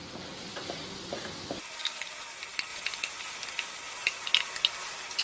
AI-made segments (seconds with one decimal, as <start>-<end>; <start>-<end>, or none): none